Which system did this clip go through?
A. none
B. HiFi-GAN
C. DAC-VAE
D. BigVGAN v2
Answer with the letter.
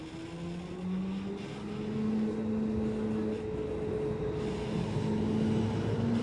A